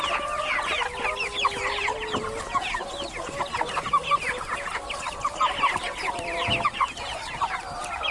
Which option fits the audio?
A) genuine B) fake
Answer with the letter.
A